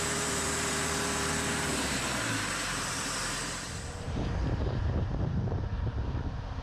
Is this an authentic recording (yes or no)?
no